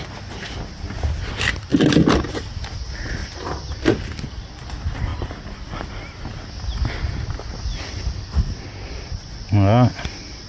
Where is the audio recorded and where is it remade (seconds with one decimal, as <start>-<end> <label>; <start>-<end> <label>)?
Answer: 0.0-10.5 recorded